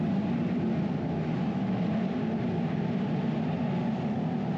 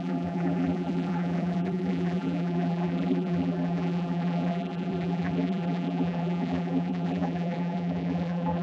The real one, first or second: first